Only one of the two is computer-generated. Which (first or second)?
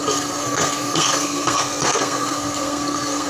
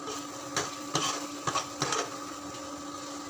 first